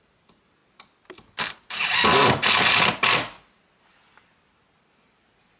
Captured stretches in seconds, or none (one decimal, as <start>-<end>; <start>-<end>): 0.6-3.9